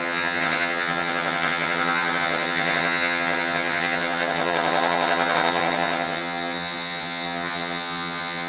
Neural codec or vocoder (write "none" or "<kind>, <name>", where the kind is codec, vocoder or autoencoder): vocoder, HiFi-GAN